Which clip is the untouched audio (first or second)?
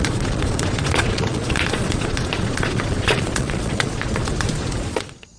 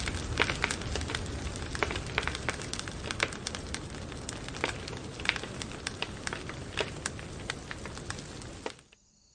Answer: second